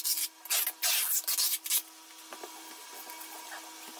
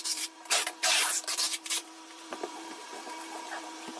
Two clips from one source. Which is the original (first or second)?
first